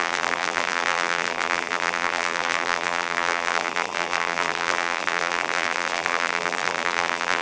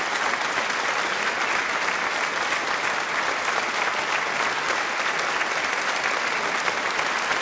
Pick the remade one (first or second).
first